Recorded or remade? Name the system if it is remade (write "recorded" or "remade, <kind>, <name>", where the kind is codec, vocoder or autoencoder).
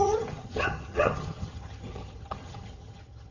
remade, vocoder, HiFi-GAN